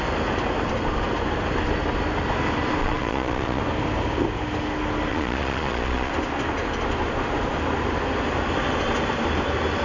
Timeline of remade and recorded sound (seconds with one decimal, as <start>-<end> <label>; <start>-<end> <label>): 0.0-2.8 recorded; 2.8-3.6 remade; 3.6-5.1 recorded; 5.1-6.1 remade; 6.1-9.8 recorded